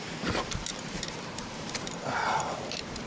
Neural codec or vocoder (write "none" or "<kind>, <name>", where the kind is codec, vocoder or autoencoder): vocoder, BigVGAN v2